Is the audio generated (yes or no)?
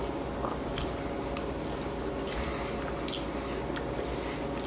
no